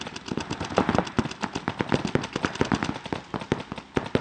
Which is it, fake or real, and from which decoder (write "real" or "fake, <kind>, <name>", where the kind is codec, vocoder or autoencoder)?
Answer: real